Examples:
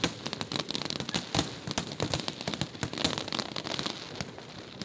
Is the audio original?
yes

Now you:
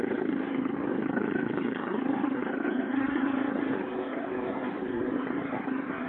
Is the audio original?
no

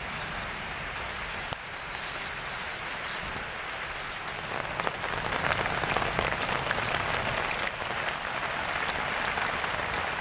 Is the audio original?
yes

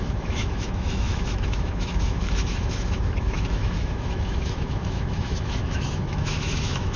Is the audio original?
no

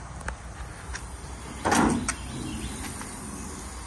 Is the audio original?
yes